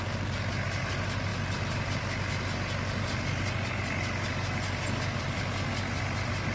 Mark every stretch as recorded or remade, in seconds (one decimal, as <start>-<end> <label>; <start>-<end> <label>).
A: 0.0-6.5 recorded